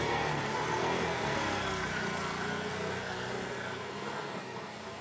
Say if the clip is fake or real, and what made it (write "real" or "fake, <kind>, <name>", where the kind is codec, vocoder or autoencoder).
fake, codec, SNAC